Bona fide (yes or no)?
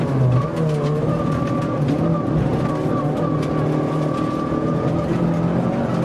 yes